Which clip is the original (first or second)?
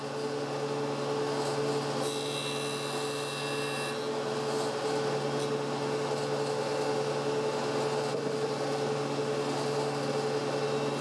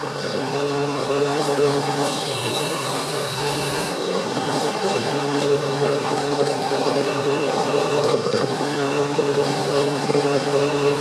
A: first